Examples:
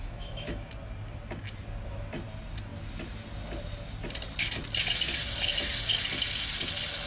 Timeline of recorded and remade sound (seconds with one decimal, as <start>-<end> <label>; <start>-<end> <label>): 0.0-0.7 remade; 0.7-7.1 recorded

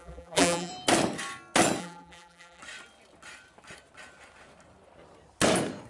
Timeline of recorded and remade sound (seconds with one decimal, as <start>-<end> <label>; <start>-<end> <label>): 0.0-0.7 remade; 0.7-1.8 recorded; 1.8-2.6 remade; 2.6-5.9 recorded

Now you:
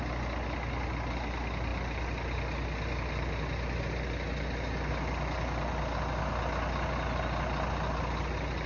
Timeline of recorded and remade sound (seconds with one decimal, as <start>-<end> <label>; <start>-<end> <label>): 0.0-8.7 recorded

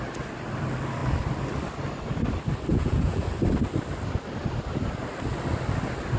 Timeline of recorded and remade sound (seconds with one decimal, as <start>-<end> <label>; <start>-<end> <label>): 0.0-2.7 recorded; 2.7-3.3 remade; 3.3-6.2 recorded